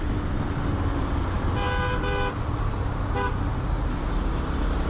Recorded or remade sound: recorded